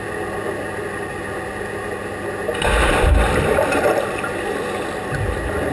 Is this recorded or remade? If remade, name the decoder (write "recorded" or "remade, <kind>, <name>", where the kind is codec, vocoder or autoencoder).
recorded